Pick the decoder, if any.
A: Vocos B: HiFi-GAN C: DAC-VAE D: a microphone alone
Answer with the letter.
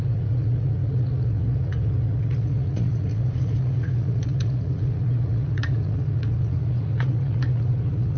A